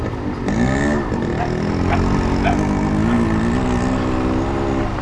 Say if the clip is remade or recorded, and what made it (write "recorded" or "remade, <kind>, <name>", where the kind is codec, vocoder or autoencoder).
recorded